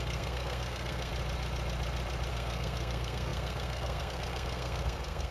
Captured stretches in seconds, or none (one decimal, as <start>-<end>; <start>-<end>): 1.1-2.3